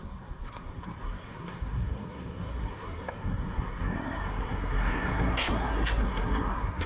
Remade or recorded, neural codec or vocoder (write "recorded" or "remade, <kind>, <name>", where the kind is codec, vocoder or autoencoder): remade, codec, SNAC